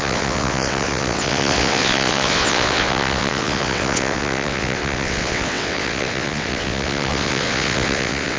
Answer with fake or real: fake